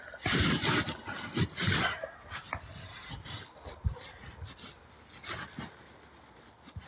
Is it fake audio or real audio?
real